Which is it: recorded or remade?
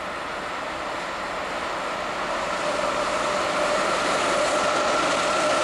recorded